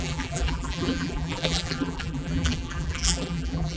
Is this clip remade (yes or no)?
yes